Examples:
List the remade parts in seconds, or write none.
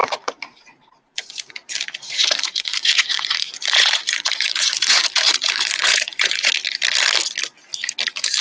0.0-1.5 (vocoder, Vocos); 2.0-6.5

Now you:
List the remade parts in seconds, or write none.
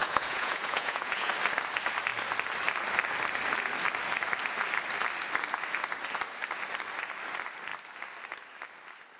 0.0-1.3 (vocoder, Vocos)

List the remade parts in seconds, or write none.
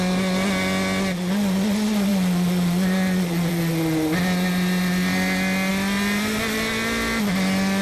none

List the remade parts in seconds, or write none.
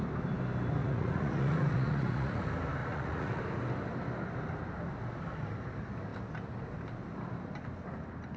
0.8-2.4 (vocoder, Vocos); 2.8-3.4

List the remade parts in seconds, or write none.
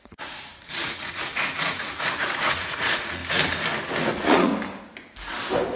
0.0-3.2 (vocoder, Vocos); 4.1-4.5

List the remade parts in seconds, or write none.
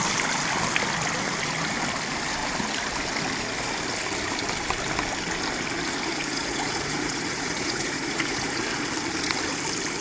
6.1-8.6 (vocoder, Vocos)